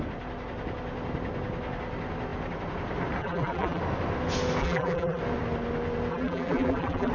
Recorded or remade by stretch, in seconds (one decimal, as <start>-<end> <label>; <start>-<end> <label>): 0.0-3.2 recorded; 3.2-3.8 remade; 3.8-4.6 recorded; 4.6-5.2 remade; 5.2-6.1 recorded; 6.1-7.1 remade